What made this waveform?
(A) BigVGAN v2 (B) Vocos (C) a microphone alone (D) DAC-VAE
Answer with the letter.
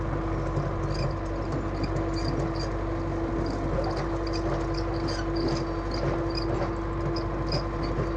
C